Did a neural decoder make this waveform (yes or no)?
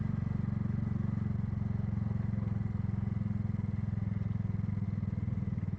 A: no